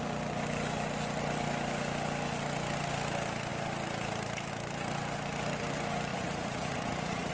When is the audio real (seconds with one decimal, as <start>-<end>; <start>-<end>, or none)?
0.0-6.1